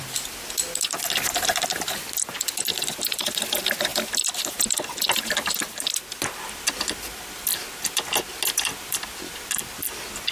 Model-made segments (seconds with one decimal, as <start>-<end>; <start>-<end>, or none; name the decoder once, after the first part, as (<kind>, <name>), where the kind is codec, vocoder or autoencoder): none